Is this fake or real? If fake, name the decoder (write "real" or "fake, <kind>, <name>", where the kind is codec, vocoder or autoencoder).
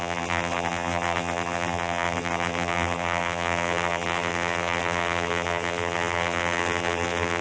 fake, vocoder, BigVGAN v2